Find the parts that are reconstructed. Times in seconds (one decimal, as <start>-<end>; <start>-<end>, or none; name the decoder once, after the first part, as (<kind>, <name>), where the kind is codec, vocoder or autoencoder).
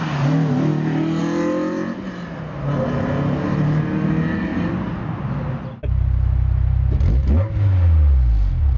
none